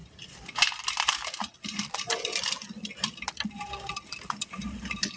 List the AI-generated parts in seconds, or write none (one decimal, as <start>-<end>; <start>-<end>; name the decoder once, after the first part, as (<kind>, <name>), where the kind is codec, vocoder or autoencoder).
none